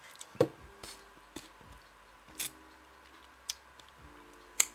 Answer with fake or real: fake